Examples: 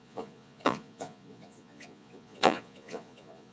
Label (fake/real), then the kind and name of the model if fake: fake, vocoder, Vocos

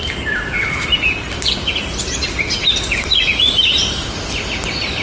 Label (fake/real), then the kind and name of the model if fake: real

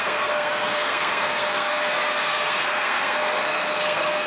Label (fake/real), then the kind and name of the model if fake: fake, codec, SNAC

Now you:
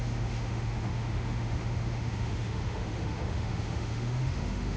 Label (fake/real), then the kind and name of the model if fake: fake, autoencoder, DAC-VAE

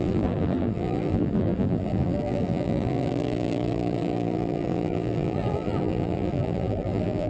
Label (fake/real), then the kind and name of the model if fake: fake, vocoder, BigVGAN v2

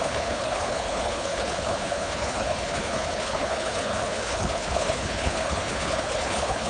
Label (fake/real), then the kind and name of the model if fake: fake, codec, HILCodec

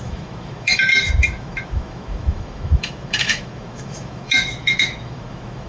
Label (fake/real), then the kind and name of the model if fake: fake, autoencoder, DAC-VAE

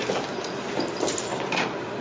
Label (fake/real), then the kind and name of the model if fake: fake, vocoder, BigVGAN v2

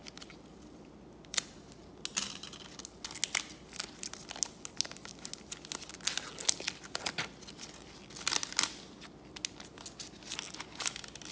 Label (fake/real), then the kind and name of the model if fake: real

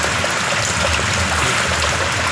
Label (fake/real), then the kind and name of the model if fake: real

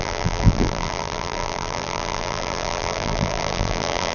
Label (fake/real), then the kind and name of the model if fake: fake, vocoder, BigVGAN v2